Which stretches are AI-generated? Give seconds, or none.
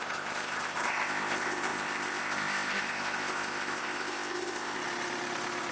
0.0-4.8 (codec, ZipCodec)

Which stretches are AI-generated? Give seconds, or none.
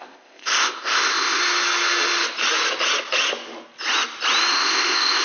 0.0-1.4 (codec, ZipCodec); 4.5-5.2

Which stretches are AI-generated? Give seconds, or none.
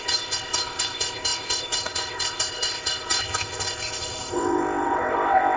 0.0-5.6 (codec, ZipCodec)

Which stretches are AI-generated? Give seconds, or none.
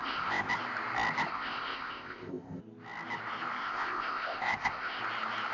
0.0-0.5 (codec, ZipCodec); 1.3-2.6; 3.6-5.0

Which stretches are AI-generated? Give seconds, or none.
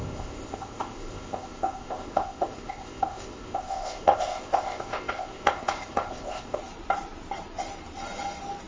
0.0-6.6 (codec, ZipCodec)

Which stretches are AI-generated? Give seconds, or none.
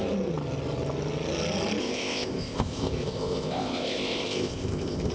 1.8-5.1 (codec, ZipCodec)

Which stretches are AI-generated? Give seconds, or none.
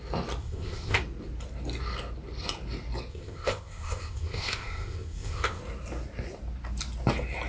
0.4-1.0 (codec, ZipCodec); 3.1-5.6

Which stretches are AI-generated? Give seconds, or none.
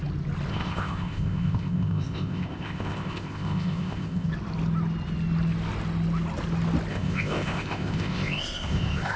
0.5-4.3 (codec, ZipCodec); 6.9-9.2